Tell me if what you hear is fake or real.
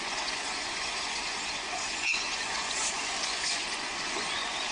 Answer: fake